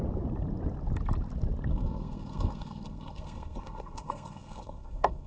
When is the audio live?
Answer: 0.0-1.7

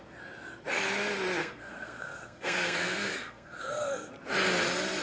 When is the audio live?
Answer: 0.0-1.4; 4.1-5.0

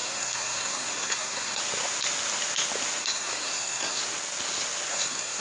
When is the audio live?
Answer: 1.6-3.0; 4.0-4.9

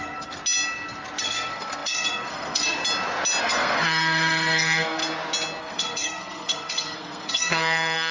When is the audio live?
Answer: 0.4-1.2; 2.8-3.4; 5.0-5.6